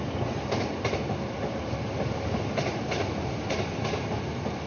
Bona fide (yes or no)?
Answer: yes